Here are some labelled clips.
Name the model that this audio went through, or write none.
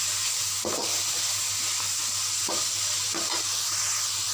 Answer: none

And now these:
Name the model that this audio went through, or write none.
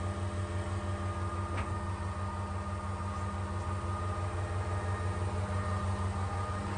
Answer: none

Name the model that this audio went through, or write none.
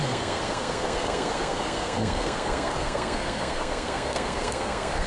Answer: codec, SNAC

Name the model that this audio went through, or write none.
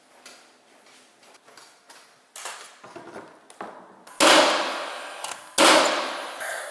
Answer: none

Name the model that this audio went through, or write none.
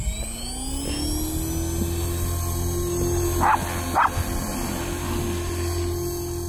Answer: none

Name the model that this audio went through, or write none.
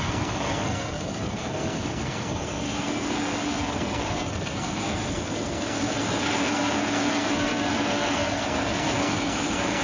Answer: codec, SNAC